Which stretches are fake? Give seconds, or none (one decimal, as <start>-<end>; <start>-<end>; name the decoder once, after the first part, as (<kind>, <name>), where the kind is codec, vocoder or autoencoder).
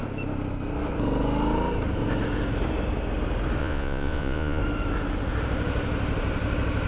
3.6-4.6 (vocoder, Vocos)